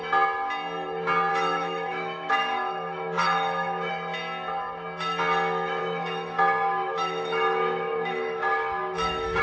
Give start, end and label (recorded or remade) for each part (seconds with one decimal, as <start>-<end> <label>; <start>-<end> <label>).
0.0-1.3 recorded; 1.3-3.9 remade; 3.9-5.8 recorded; 5.8-9.4 remade